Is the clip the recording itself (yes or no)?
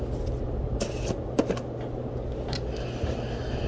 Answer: yes